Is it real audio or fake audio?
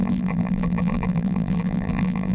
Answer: fake